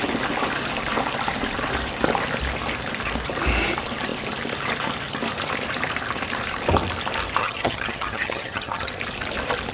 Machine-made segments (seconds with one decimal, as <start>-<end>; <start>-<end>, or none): 7.4-8.9